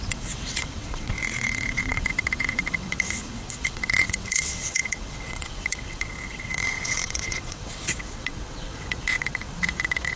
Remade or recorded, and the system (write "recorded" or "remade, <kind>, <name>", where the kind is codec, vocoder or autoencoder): remade, vocoder, WaveNeXt